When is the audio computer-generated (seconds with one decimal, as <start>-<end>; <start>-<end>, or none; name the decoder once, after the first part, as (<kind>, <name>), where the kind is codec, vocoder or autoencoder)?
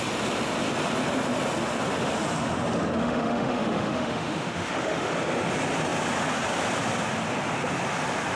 3.0-5.1 (autoencoder, DAC-VAE)